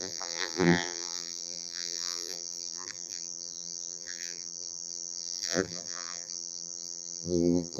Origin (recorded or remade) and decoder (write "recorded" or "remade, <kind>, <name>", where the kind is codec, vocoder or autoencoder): remade, vocoder, BigVGAN v2